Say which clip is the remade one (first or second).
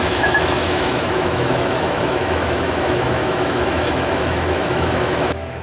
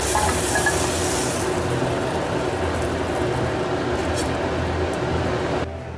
first